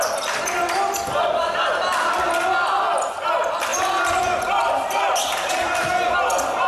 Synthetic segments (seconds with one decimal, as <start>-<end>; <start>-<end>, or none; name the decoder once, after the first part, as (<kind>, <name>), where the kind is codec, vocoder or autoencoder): none